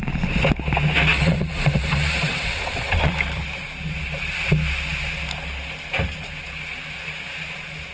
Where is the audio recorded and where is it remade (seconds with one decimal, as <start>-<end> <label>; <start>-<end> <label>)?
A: 0.0-1.1 recorded; 1.1-3.1 remade; 3.1-7.9 recorded